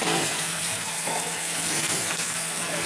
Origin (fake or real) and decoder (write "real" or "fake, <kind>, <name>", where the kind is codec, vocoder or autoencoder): fake, codec, SNAC